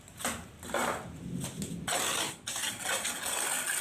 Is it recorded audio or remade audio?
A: recorded